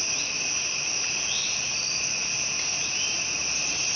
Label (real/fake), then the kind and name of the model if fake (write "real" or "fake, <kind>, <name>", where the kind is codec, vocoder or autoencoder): real